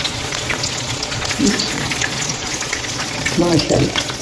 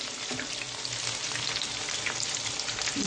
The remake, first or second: first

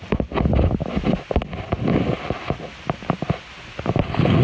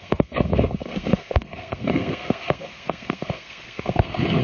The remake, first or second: second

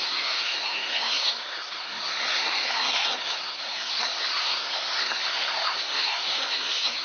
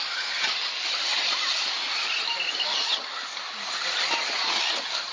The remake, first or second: first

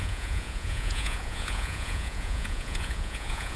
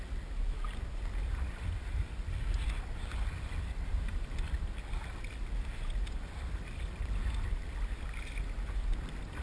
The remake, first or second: first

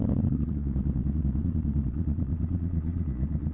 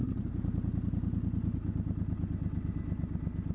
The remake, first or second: first